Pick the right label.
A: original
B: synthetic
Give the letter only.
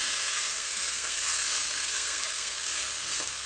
B